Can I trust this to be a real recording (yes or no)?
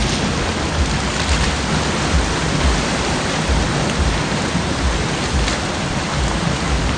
yes